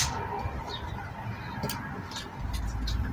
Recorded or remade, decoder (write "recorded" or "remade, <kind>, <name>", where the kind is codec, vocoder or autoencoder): recorded